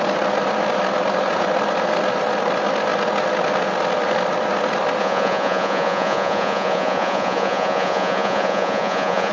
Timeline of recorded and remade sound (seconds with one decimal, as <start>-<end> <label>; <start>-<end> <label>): 0.0-5.0 recorded; 5.0-9.3 remade